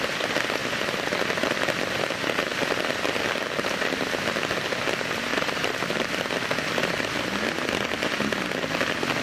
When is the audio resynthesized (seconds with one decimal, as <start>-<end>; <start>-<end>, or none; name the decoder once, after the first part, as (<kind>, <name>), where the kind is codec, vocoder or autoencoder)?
none